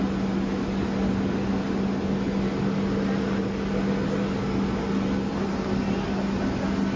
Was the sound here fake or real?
real